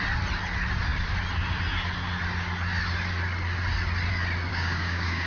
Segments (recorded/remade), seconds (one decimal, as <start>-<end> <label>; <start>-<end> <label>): 0.0-4.5 recorded; 4.5-5.3 remade